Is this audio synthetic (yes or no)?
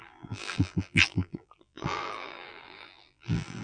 yes